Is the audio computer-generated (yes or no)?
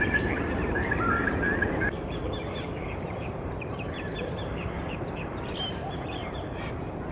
yes